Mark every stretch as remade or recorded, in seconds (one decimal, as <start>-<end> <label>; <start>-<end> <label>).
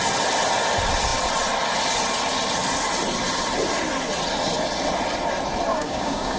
0.0-5.7 recorded; 5.7-6.4 remade